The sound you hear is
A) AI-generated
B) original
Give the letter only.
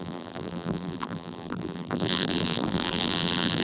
A